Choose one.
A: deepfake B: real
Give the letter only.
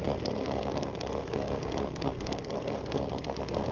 A